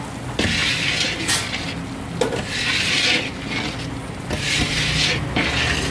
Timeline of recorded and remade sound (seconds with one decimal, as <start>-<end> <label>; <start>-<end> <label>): 0.0-5.9 recorded